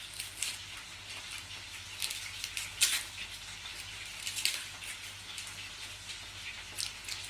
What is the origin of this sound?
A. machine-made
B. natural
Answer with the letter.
B